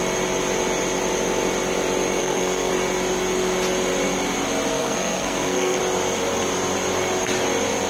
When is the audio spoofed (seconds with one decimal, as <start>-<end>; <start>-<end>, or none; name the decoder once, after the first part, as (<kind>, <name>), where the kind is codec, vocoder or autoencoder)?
2.2-2.7 (codec, SNAC); 4.7-5.8